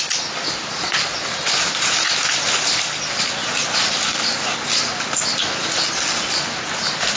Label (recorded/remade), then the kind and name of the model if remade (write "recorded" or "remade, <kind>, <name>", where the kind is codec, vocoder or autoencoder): recorded